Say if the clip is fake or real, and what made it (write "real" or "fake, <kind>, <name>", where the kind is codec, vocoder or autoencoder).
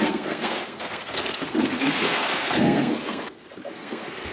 fake, codec, SNAC